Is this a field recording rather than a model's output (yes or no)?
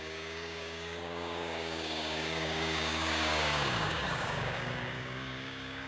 no